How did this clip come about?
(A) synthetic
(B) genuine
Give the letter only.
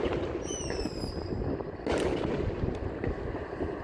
B